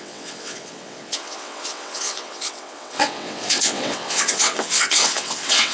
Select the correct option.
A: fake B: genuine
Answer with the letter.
A